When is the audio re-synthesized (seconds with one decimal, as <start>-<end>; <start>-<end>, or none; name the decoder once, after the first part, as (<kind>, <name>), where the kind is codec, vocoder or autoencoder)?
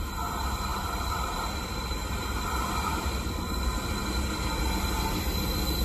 0.7-2.5 (vocoder, BigVGAN v2); 2.9-3.6